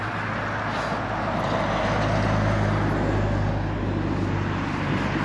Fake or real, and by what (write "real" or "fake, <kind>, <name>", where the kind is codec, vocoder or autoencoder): real